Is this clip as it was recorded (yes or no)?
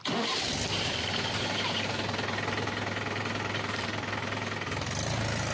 yes